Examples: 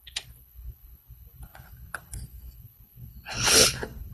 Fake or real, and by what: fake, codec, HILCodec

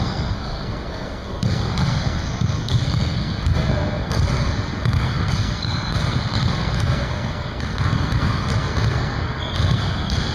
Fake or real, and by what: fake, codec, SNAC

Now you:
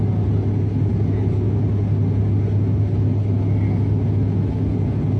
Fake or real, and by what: real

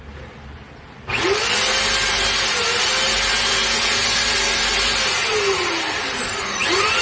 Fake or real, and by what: real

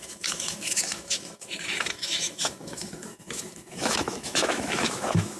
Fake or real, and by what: fake, autoencoder, DAC-VAE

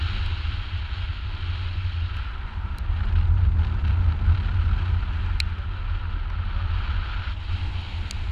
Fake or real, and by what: real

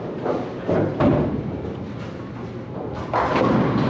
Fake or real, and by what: real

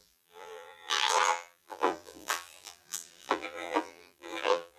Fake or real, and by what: fake, vocoder, BigVGAN v2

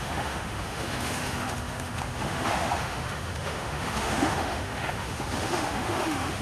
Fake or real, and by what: fake, autoencoder, DAC-VAE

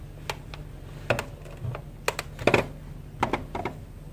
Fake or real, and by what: real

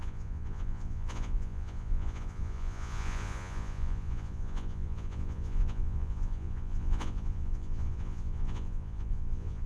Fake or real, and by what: fake, vocoder, Vocos